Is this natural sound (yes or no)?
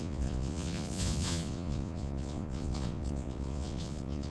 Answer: no